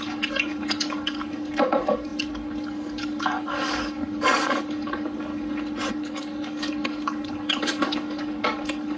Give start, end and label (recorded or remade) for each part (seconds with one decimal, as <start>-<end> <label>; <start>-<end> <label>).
0.0-5.3 remade; 5.3-5.9 recorded; 5.9-9.0 remade